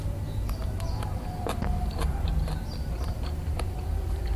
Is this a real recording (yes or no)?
no